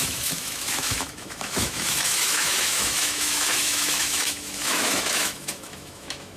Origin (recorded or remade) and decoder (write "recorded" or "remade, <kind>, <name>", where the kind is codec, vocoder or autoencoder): remade, autoencoder, DAC-VAE